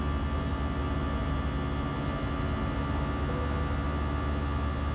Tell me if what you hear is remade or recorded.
recorded